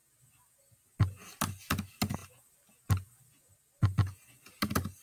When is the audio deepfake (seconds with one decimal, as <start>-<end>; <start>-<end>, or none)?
none